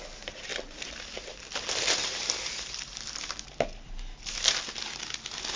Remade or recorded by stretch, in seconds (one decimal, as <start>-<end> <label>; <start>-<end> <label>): 0.0-5.6 recorded